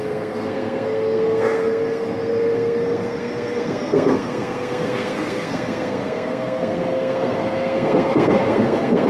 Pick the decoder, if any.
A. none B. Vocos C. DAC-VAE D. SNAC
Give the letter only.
D